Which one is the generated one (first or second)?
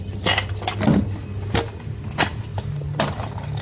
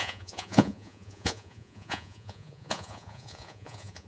second